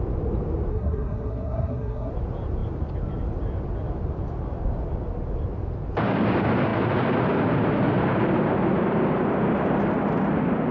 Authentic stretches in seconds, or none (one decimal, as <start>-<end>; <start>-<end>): 0.0-0.7; 2.1-10.7